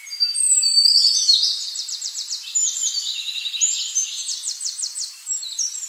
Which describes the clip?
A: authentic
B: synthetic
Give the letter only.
B